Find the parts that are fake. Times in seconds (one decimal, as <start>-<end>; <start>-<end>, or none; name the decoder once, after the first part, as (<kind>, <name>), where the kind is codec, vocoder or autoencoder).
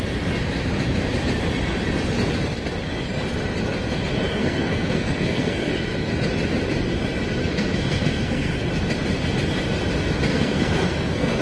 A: 4.3-5.7 (codec, SNAC); 7.4-8.7; 10.3-11.4